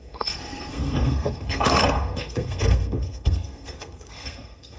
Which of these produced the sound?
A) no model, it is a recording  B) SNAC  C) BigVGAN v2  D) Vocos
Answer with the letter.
B